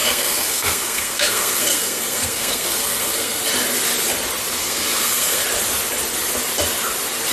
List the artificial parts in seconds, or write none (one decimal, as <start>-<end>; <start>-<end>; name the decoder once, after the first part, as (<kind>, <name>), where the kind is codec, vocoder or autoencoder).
0.0-3.4 (codec, SNAC); 4.6-5.4